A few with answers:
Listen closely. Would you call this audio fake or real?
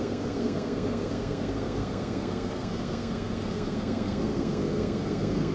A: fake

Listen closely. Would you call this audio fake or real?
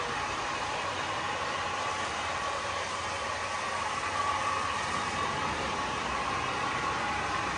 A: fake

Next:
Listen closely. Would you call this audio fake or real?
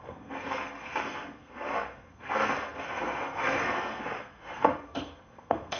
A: fake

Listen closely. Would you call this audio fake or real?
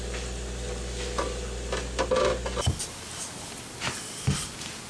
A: real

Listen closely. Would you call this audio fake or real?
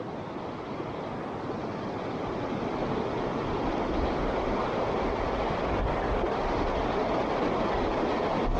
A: real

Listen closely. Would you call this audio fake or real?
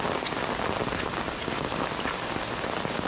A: real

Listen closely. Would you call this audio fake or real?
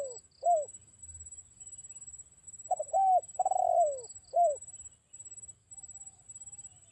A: real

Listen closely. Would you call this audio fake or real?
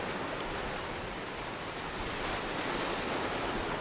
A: real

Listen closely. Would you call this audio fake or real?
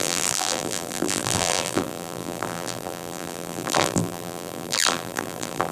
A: fake